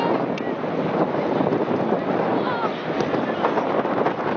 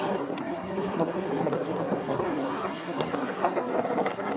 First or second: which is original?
first